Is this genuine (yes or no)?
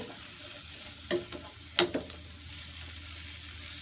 yes